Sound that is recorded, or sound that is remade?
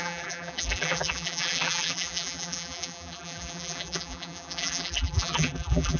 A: remade